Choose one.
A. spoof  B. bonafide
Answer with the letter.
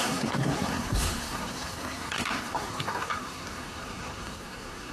A